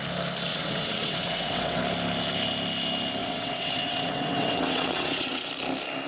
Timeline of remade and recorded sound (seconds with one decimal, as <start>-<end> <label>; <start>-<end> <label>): 0.0-0.5 recorded; 0.5-1.8 remade; 1.8-3.2 recorded; 3.2-5.5 remade; 5.5-6.1 recorded